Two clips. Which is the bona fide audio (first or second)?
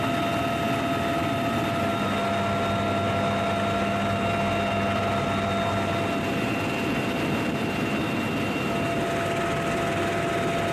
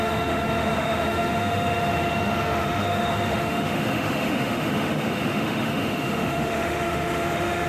first